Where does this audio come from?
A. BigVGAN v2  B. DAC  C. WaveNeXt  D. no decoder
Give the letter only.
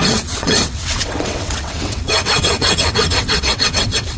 C